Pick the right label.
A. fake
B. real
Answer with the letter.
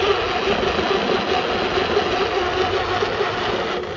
B